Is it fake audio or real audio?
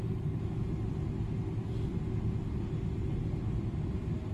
real